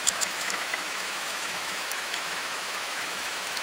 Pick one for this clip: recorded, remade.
remade